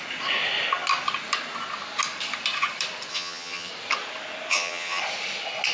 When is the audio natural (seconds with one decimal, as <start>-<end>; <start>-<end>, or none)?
0.0-3.1; 3.7-4.5; 5.0-5.7